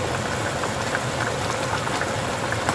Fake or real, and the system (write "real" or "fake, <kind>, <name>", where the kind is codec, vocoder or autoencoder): real